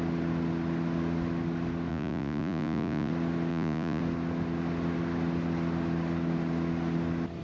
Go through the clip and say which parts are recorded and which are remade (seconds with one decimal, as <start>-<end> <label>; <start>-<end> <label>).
0.0-1.9 recorded; 1.9-3.1 remade; 3.1-3.5 recorded; 3.5-4.0 remade; 4.0-7.4 recorded